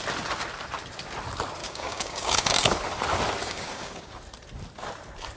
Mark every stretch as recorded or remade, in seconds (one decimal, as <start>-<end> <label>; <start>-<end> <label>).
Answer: 0.0-1.6 recorded; 1.6-2.6 remade; 2.6-3.4 recorded; 3.4-4.1 remade; 4.1-5.4 recorded

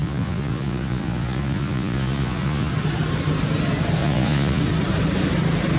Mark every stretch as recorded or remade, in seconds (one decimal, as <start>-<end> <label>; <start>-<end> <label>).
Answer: 0.0-2.7 remade; 2.7-4.0 recorded; 4.0-4.6 remade; 4.6-5.8 recorded

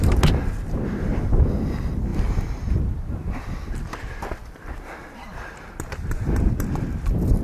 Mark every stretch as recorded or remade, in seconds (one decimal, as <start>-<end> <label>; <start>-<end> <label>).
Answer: 0.0-7.4 recorded

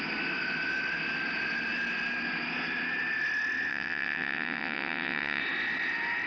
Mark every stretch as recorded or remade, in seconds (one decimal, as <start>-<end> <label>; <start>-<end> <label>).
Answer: 0.0-3.7 recorded; 3.7-5.4 remade; 5.4-6.3 recorded

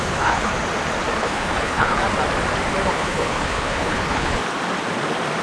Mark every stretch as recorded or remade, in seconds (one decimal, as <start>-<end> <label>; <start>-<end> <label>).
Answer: 0.0-0.5 remade; 0.5-1.2 recorded; 1.2-2.0 remade; 2.0-2.9 recorded; 2.9-4.4 remade; 4.4-5.4 recorded